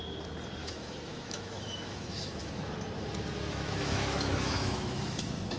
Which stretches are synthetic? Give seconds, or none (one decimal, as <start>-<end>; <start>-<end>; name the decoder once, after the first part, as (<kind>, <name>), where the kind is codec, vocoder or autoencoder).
0.6-2.7 (autoencoder, DAC-VAE); 3.3-5.6